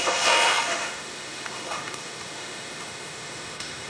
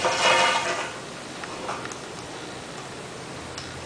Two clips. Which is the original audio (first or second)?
second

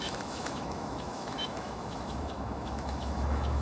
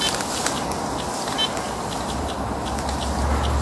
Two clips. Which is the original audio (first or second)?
second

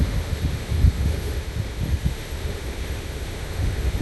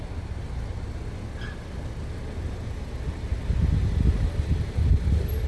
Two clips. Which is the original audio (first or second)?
second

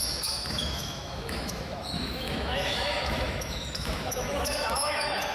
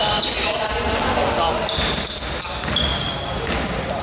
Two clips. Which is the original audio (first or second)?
second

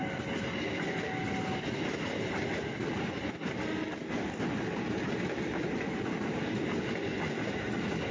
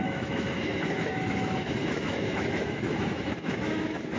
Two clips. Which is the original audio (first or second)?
first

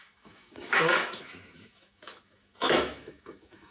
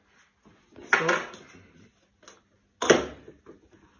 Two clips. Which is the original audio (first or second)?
second